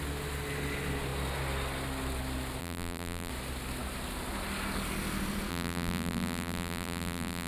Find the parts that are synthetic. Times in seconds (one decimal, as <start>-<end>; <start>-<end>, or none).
2.6-3.3; 5.5-7.5